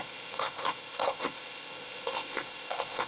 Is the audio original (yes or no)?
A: no